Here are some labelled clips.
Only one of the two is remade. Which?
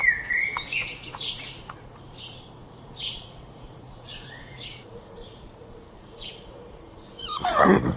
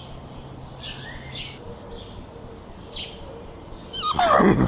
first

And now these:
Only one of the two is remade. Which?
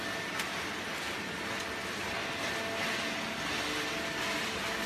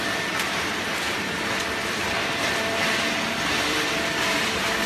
second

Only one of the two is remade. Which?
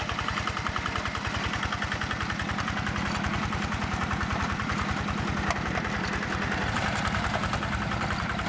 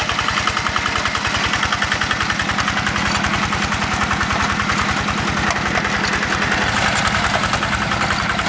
first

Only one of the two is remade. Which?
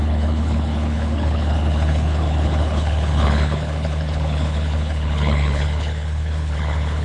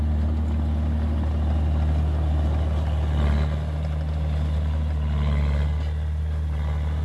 first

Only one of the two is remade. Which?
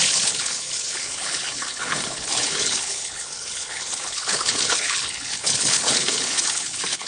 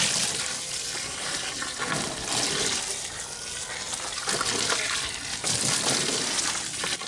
first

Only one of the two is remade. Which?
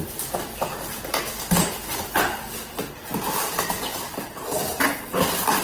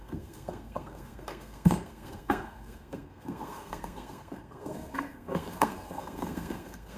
second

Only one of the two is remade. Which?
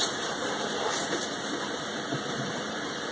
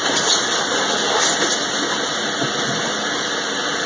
first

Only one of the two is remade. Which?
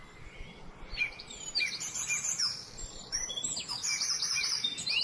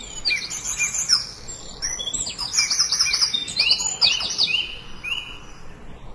first